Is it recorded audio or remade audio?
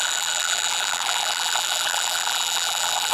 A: remade